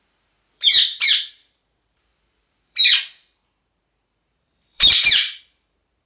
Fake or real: fake